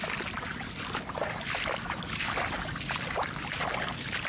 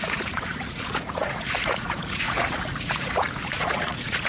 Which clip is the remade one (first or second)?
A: second